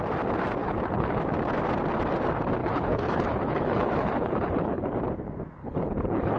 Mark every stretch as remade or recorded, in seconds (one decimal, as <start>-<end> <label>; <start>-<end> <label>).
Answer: 0.0-0.6 recorded; 0.6-1.2 remade; 1.2-2.6 recorded; 2.6-5.0 remade; 5.0-5.6 recorded; 5.6-6.4 remade